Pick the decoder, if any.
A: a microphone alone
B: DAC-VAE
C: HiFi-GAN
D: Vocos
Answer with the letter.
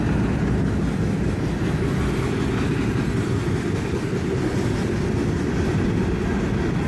A